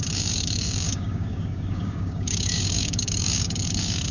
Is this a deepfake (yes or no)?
yes